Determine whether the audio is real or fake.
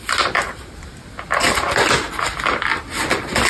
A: real